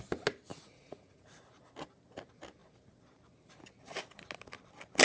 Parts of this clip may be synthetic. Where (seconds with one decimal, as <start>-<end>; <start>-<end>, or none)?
0.5-1.3